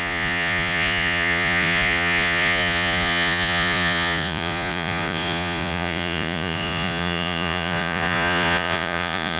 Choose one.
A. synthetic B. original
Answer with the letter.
A